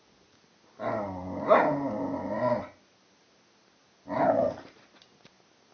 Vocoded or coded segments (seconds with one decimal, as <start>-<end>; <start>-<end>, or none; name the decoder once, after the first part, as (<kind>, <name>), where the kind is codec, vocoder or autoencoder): none